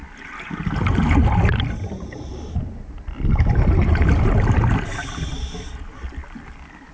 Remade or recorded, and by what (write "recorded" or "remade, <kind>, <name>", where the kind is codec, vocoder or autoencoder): recorded